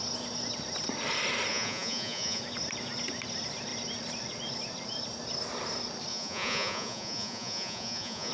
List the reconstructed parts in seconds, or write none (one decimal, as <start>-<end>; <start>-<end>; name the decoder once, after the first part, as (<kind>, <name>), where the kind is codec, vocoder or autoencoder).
1.5-2.4 (vocoder, Vocos); 6.1-8.3